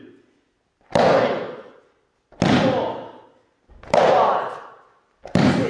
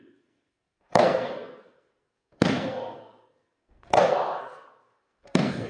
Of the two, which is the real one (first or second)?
first